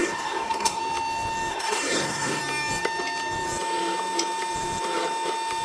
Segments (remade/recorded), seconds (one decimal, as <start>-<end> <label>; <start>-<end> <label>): 0.0-0.8 remade; 0.8-1.5 recorded; 1.5-2.4 remade; 2.4-5.6 recorded